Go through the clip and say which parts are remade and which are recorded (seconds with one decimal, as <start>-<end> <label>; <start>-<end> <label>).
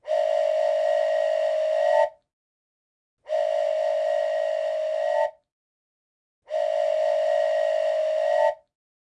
0.0-9.2 recorded